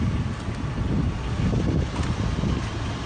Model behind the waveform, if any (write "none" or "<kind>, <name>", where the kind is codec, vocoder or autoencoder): none